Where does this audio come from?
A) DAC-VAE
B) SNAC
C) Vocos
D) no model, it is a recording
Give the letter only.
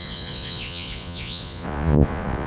C